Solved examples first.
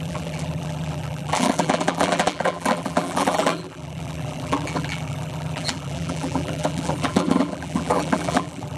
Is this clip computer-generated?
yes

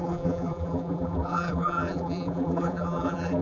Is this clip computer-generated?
yes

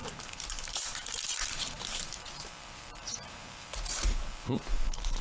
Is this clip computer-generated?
yes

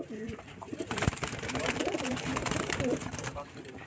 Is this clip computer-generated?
yes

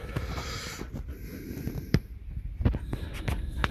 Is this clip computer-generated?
yes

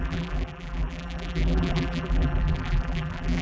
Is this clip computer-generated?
yes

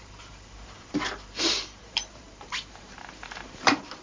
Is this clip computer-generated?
yes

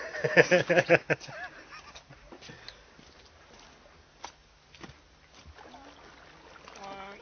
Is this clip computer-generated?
no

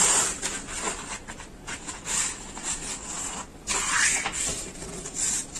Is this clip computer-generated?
no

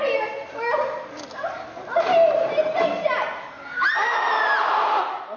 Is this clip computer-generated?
no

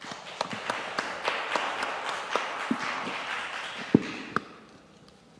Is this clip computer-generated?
no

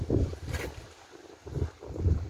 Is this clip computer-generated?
no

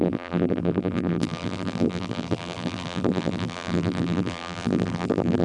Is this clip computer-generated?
yes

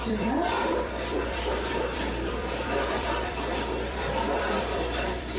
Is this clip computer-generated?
yes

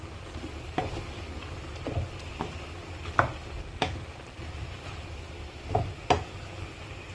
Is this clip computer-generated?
no